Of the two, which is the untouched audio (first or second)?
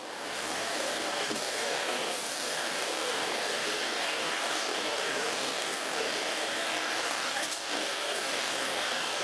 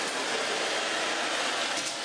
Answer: second